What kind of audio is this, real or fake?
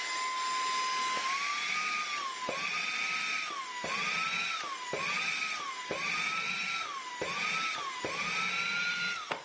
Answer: real